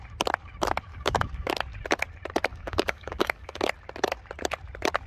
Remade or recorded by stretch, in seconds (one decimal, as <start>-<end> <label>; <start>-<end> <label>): 0.0-0.9 recorded; 0.9-1.5 remade; 1.5-2.5 recorded; 2.5-3.6 remade; 3.6-5.1 recorded